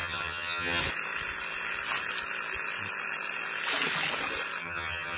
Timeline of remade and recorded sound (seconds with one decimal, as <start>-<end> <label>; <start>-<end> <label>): 0.0-0.8 remade; 0.8-4.6 recorded; 4.6-5.2 remade